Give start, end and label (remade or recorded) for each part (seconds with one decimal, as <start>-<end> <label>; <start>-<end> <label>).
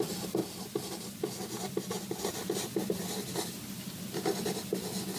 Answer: 0.0-5.2 recorded